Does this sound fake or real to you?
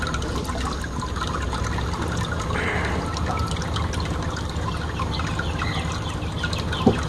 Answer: real